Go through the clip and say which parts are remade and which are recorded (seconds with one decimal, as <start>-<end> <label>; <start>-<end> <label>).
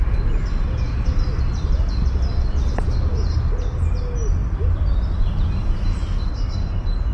0.0-4.4 recorded; 4.4-5.5 remade; 5.5-7.1 recorded